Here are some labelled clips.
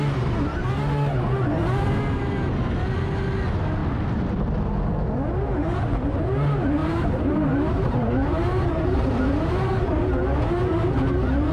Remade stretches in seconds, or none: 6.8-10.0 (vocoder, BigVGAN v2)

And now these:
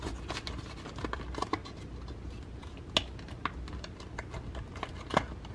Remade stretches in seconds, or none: none

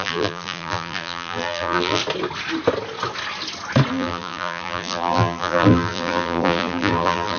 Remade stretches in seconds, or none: 0.0-2.0 (vocoder, BigVGAN v2); 3.9-7.4

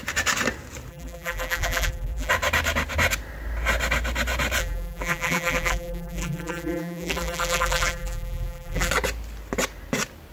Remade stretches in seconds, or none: 0.9-2.3 (vocoder, BigVGAN v2); 4.6-8.9

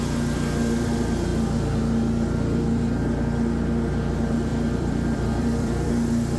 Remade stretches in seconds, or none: 4.5-5.9 (vocoder, BigVGAN v2)

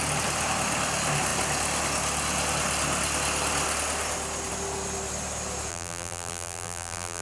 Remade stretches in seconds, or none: 5.7-7.2 (vocoder, BigVGAN v2)